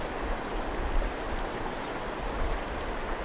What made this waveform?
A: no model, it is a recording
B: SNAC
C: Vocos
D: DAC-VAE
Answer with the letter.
A